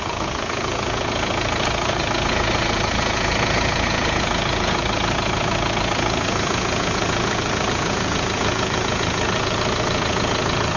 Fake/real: fake